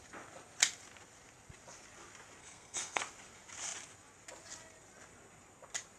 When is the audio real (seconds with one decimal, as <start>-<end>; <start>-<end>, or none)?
0.0-2.4; 3.0-6.0